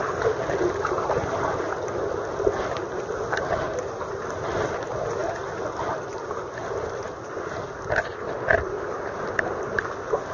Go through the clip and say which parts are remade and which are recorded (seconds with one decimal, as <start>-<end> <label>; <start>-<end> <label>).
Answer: 0.0-10.3 recorded